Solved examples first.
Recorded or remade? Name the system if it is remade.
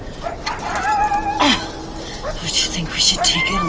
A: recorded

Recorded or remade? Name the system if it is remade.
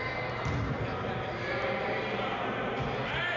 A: recorded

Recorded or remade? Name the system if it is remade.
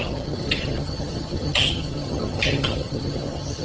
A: remade, vocoder, HiFi-GAN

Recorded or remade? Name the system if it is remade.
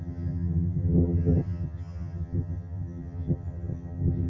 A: remade, vocoder, HiFi-GAN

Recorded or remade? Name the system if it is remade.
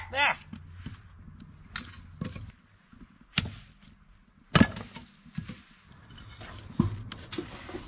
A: recorded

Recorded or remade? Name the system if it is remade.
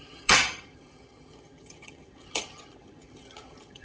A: remade, vocoder, HiFi-GAN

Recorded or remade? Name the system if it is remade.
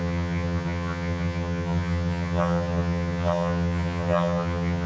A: remade, vocoder, HiFi-GAN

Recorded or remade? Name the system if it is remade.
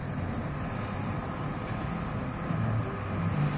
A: recorded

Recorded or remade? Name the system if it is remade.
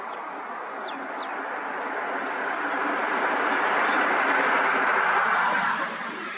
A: recorded